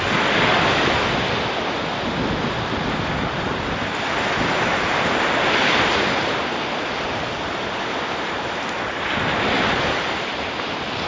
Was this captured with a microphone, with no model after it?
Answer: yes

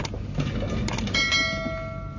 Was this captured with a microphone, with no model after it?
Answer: yes